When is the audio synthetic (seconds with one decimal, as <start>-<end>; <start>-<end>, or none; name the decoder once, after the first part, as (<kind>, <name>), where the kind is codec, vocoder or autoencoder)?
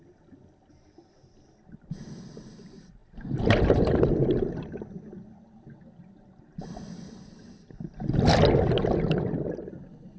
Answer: none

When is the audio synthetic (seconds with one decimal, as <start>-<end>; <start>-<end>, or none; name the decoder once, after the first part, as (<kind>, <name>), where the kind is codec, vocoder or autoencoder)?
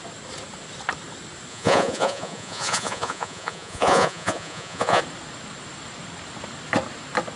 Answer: 1.5-5.0 (vocoder, Vocos)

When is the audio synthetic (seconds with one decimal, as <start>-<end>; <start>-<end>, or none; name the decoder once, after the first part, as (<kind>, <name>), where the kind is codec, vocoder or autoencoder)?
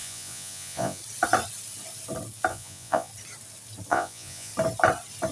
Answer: 0.0-1.0 (vocoder, Vocos); 2.5-3.1; 3.9-4.5